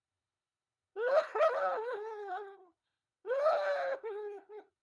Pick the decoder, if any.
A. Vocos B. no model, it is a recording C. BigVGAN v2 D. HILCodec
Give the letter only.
D